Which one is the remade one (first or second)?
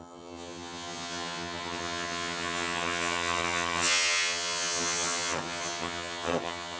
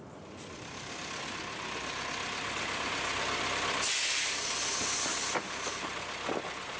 first